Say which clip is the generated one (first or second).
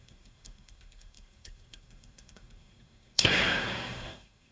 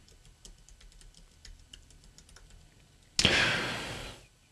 first